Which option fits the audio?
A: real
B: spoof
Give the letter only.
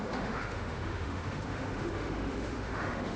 B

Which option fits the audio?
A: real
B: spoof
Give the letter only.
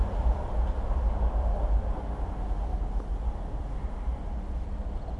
A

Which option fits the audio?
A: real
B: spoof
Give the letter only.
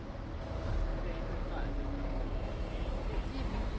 A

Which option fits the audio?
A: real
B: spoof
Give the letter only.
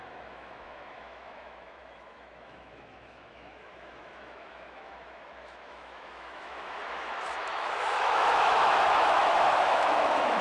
B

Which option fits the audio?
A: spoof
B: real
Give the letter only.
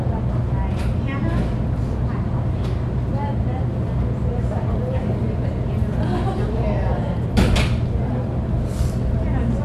B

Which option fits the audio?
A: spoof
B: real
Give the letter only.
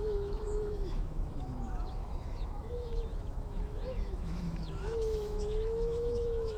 A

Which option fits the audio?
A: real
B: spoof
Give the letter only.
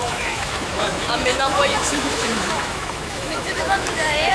B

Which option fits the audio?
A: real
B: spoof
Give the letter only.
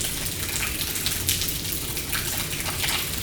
A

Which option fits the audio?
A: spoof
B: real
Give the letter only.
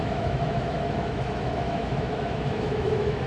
A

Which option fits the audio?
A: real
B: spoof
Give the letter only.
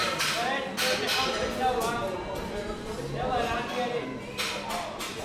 A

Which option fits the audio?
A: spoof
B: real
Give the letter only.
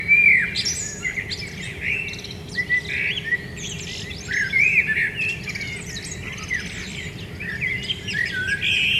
B